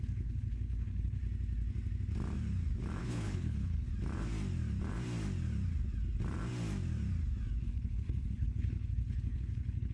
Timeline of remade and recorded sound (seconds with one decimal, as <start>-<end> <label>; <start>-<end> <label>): 0.0-1.2 remade; 1.2-3.0 recorded; 3.0-3.9 remade; 3.9-7.6 recorded; 7.6-9.9 remade